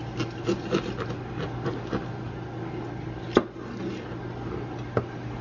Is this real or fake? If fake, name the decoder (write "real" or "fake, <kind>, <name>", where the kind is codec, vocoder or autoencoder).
real